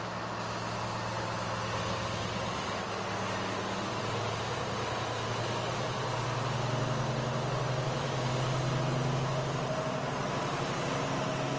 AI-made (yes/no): no